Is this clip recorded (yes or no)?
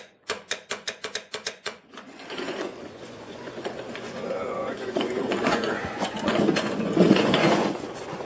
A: no